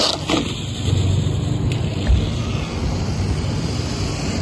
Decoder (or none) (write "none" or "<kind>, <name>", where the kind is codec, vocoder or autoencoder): none